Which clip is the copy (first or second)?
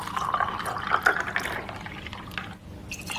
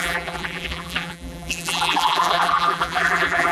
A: second